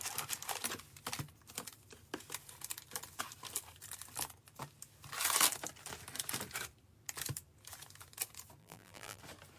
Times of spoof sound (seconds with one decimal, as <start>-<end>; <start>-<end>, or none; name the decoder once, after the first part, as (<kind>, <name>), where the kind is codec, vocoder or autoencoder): 8.6-9.2 (vocoder, BigVGAN v2)